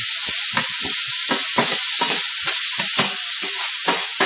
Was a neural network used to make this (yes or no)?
no